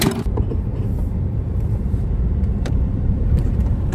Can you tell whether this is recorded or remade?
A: remade